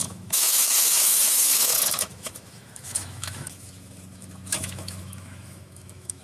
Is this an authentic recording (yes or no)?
no